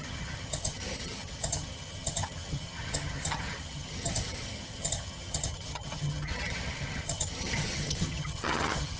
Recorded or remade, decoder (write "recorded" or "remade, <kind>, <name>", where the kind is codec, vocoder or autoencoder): remade, vocoder, HiFi-GAN